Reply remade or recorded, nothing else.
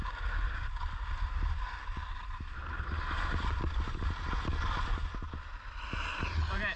recorded